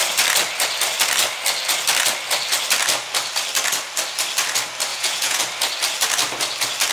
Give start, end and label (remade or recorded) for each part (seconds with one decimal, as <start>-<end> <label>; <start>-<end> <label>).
0.0-4.9 recorded; 4.9-5.4 remade; 5.4-6.9 recorded